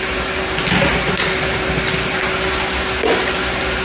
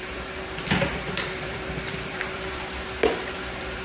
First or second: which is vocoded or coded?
second